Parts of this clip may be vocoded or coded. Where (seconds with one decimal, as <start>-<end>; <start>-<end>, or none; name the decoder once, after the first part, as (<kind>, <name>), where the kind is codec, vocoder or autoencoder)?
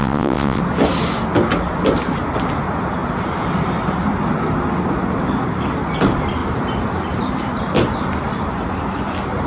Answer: 0.0-0.6 (vocoder, WaveNeXt)